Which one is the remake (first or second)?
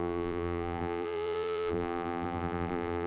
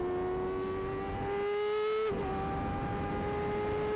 first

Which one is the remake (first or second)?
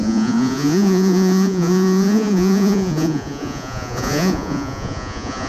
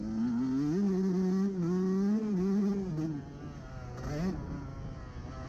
first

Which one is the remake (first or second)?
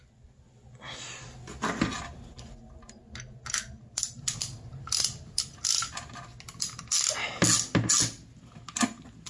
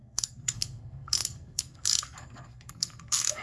second